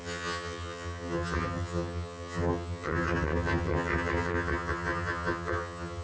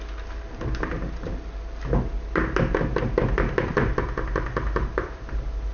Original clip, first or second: second